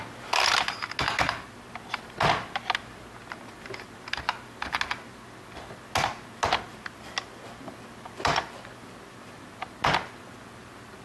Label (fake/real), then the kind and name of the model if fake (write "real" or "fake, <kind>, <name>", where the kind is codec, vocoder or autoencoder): real